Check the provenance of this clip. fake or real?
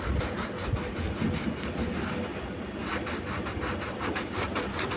real